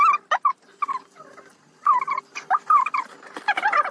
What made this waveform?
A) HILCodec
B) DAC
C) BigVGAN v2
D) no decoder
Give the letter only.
D